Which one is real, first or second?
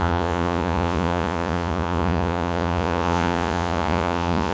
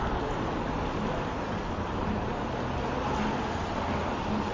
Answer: second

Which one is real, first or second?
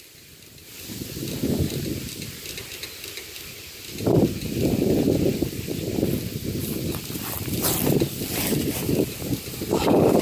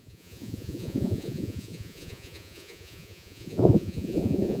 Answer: first